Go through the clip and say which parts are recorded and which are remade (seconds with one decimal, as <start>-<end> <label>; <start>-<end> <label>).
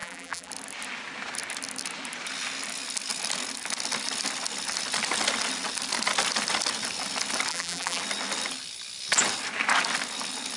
0.0-0.5 remade; 0.5-7.5 recorded; 7.5-8.0 remade; 8.0-10.6 recorded